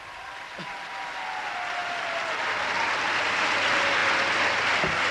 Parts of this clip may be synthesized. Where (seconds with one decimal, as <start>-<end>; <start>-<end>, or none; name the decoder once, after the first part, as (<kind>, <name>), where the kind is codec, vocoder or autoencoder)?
none